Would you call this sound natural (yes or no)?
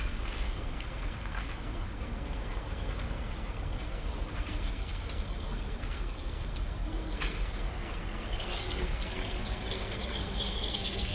no